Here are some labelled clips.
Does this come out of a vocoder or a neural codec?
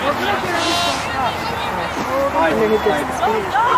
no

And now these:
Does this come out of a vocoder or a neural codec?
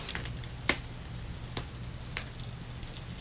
no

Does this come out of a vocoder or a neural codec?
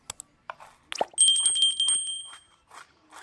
no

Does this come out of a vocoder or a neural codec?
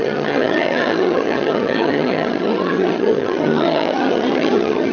yes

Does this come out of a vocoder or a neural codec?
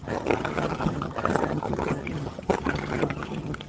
yes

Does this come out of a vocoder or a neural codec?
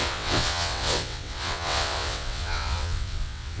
yes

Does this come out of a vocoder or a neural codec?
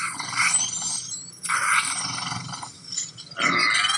no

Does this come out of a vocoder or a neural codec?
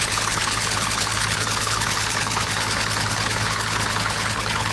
yes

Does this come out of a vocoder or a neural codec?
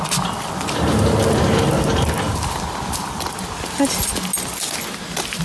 no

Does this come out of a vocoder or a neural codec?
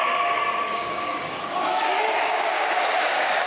yes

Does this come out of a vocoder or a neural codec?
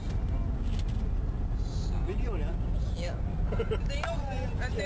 no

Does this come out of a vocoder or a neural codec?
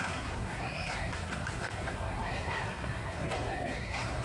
yes